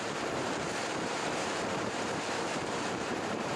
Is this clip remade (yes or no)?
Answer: yes